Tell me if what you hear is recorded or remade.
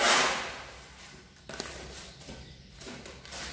recorded